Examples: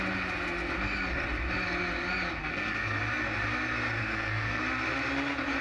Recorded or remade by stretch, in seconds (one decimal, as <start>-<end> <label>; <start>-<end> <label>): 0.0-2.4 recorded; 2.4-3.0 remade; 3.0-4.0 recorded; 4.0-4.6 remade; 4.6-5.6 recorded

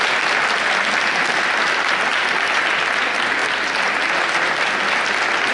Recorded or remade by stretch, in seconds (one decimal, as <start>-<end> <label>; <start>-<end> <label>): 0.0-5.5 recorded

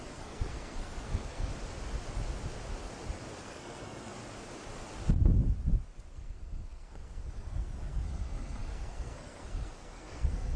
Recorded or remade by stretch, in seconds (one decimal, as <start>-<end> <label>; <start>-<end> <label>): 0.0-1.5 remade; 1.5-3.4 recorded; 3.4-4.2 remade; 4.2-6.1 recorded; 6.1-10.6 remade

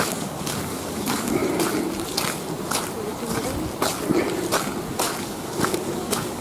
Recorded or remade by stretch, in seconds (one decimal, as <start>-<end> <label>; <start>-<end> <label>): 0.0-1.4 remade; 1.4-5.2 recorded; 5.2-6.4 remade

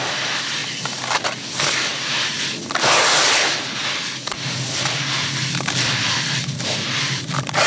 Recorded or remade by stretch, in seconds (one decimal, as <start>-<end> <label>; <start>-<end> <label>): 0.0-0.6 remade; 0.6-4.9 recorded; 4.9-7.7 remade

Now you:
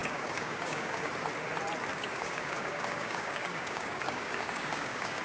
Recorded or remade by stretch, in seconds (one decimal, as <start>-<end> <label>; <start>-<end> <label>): 0.0-1.1 remade; 1.1-1.9 recorded; 1.9-5.2 remade